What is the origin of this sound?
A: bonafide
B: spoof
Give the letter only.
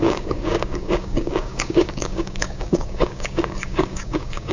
B